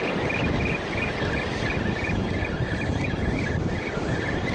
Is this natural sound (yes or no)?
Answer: yes